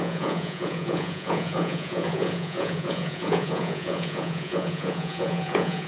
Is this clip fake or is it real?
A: fake